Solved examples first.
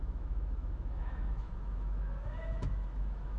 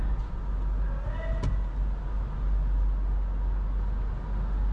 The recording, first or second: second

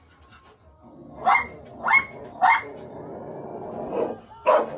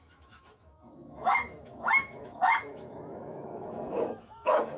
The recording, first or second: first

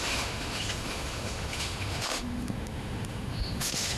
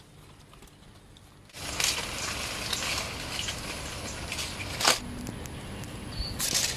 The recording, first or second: second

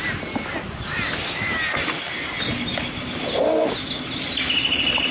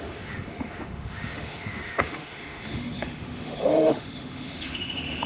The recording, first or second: first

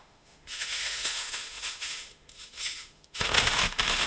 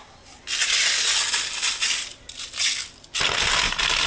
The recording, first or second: second